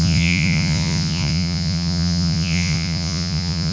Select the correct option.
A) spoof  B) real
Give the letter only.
A